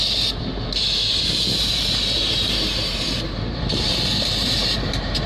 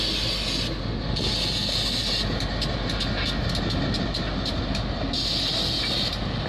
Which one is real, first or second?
second